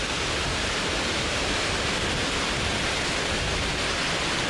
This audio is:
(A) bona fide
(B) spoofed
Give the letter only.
A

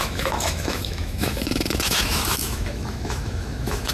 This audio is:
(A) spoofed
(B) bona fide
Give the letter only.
A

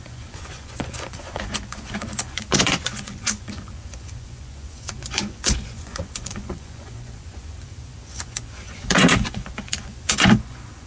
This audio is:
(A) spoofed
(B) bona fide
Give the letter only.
A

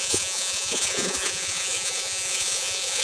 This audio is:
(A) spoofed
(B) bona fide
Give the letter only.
A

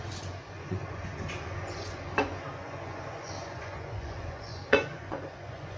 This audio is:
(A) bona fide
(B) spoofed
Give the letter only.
B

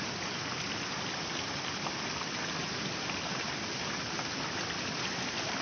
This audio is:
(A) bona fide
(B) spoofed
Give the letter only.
A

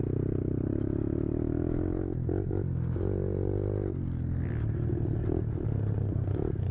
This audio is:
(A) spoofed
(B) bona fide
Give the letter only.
B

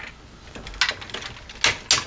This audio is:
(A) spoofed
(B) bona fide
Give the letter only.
B